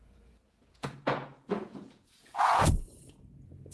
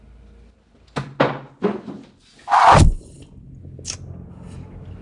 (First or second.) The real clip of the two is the second